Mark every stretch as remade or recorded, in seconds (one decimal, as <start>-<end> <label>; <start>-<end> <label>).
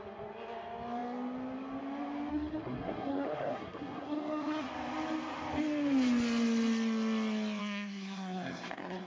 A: 0.0-2.3 recorded; 2.3-4.7 remade; 4.7-7.6 recorded; 7.6-9.1 remade